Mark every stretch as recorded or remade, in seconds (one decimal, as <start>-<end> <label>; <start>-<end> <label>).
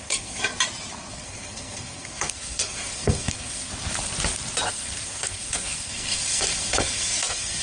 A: 0.0-0.5 remade; 0.5-1.1 recorded; 1.1-3.7 remade; 3.7-4.7 recorded; 4.7-7.6 remade